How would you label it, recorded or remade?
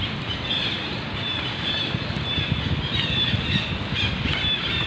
recorded